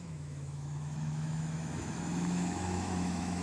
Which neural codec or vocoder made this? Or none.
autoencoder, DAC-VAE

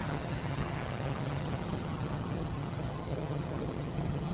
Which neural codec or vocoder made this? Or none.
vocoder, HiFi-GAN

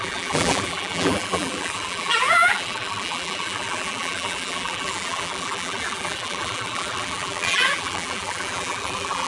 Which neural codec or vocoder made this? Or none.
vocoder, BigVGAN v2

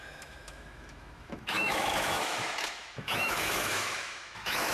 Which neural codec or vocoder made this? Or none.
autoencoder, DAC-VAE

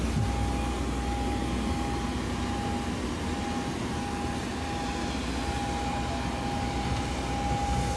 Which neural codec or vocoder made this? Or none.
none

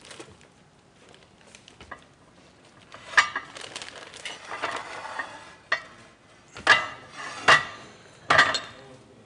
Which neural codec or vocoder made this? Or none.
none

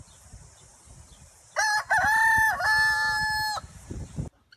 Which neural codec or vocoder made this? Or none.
none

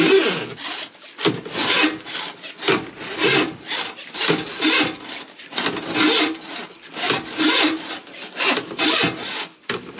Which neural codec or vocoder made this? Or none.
none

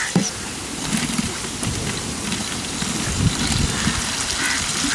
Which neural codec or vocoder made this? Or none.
none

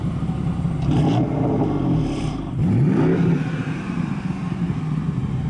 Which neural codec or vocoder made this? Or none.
vocoder, BigVGAN v2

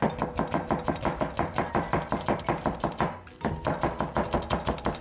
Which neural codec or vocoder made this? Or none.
none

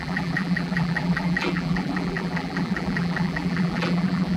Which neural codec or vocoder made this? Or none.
vocoder, BigVGAN v2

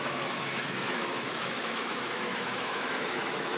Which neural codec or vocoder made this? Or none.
autoencoder, DAC-VAE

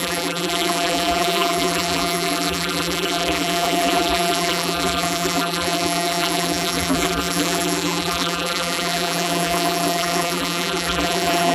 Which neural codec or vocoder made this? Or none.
vocoder, BigVGAN v2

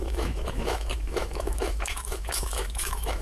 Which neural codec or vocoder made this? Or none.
autoencoder, DAC-VAE